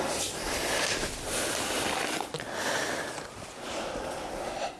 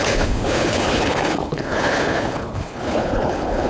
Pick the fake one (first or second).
second